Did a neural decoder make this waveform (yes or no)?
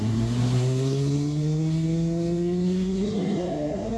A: yes